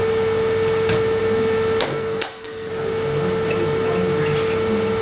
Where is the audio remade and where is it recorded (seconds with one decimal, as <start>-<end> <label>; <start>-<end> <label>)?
0.0-1.9 recorded; 1.9-2.7 remade; 2.7-5.0 recorded